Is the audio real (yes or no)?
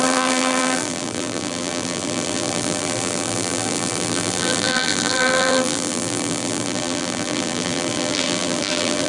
no